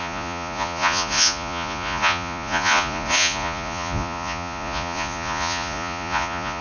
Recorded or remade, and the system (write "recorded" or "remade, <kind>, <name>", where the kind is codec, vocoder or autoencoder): remade, vocoder, Vocos